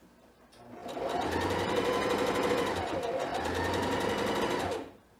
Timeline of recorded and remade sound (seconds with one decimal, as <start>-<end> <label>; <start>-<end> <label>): 0.0-5.2 recorded